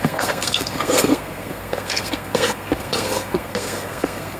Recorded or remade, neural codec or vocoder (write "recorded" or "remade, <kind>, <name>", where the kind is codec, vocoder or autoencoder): remade, codec, SNAC